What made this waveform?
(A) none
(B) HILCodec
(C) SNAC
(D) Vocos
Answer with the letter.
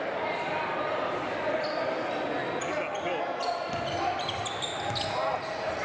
A